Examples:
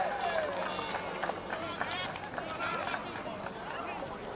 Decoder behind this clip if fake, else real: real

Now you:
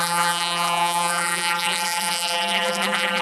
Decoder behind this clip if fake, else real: fake, vocoder, BigVGAN v2